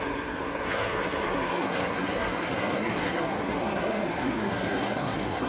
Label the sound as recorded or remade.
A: remade